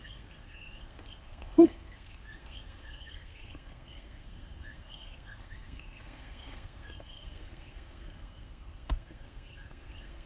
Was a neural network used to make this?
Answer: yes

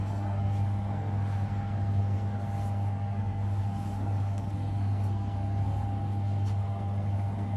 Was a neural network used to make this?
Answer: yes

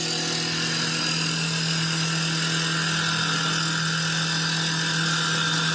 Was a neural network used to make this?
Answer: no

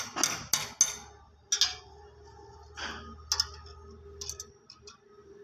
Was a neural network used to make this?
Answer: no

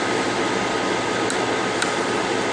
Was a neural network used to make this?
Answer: no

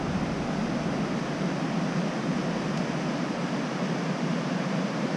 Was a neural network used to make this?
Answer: no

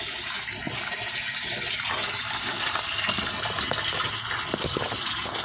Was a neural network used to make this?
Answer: no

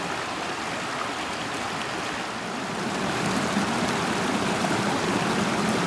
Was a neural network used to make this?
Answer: no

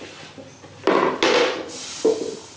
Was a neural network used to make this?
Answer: no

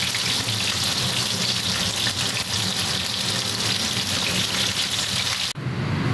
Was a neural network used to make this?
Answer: no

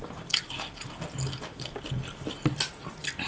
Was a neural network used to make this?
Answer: no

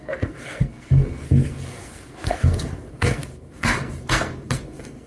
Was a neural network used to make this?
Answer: yes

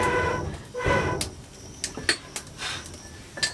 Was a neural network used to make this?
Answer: no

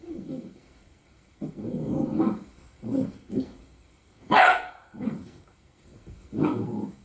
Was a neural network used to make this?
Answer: yes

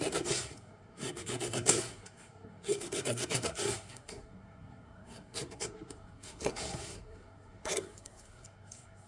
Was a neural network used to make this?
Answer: yes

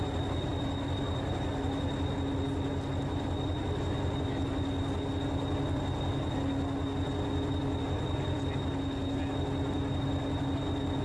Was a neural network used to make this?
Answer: no